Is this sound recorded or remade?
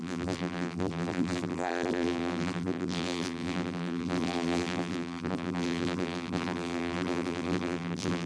remade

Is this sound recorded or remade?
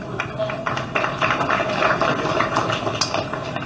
recorded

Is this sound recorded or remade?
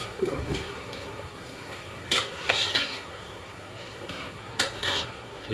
remade